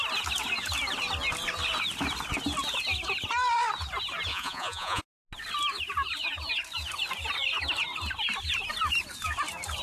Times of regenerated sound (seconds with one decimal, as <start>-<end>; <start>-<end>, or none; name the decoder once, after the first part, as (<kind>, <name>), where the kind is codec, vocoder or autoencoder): 4.3-5.0 (vocoder, Vocos)